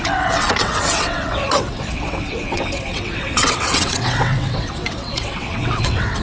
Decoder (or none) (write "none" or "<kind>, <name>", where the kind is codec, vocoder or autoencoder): vocoder, WaveNeXt